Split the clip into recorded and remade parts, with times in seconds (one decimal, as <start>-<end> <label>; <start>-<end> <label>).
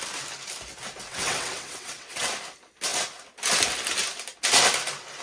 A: 0.0-1.1 recorded; 1.1-2.3 remade; 2.3-5.2 recorded